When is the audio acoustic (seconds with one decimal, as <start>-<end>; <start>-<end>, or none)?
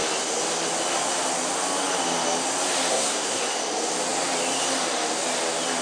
0.0-2.9; 3.4-5.8